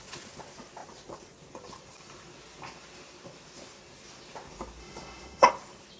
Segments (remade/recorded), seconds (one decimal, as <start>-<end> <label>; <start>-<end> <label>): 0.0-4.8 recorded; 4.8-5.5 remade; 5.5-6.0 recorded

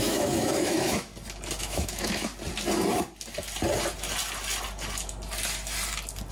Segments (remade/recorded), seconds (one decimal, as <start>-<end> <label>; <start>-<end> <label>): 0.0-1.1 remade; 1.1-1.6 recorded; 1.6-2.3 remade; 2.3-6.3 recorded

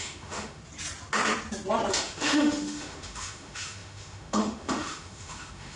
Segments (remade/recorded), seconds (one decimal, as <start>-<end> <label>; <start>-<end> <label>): 0.0-0.6 remade; 0.6-1.9 recorded; 1.9-5.8 remade

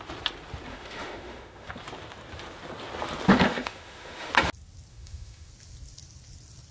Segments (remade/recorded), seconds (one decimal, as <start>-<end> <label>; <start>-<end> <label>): 0.0-0.7 recorded; 0.7-1.7 remade; 1.7-3.5 recorded; 3.5-4.3 remade; 4.3-4.9 recorded; 4.9-5.5 remade; 5.5-6.7 recorded